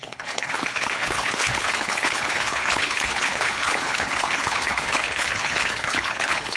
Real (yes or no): no